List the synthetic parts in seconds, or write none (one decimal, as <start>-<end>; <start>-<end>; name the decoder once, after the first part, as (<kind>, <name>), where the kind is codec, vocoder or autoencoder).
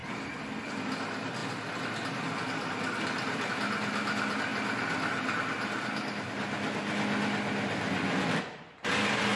1.4-3.5 (vocoder, BigVGAN v2)